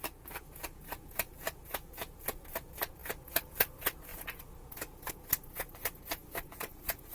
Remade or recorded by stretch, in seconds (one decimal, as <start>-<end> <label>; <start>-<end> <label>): 0.0-7.1 remade